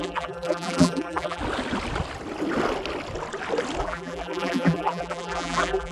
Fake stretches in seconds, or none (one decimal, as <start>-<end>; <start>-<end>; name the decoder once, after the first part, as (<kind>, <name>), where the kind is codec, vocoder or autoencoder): 0.0-1.4 (vocoder, BigVGAN v2); 3.8-5.9